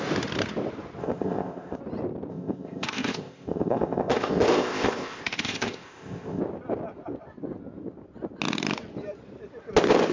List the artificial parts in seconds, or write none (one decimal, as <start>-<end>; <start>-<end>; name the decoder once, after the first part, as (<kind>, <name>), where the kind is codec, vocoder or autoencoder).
1.0-1.8 (codec, ZipCodec); 2.3-6.4